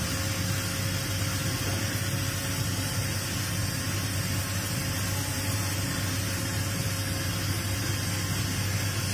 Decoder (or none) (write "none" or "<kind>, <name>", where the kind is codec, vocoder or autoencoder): none